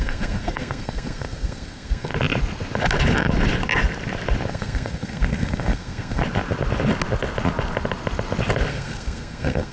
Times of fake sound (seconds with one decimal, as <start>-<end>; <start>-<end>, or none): 0.0-2.1; 4.5-6.2; 8.7-9.7